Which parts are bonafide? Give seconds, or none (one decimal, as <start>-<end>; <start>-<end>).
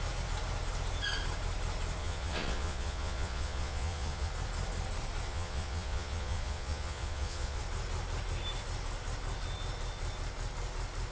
0.0-2.0; 4.3-5.3; 7.6-11.1